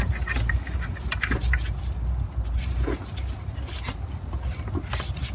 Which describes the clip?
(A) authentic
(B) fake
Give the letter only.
A